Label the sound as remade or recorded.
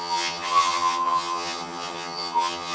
remade